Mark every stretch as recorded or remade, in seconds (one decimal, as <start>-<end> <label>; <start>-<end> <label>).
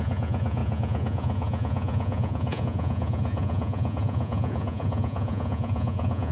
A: 0.0-6.3 remade